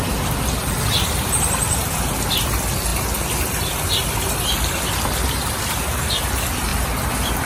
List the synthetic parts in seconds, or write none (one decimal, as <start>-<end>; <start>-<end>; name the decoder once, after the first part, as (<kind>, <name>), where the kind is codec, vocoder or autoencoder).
none